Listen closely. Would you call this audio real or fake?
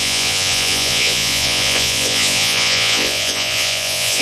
fake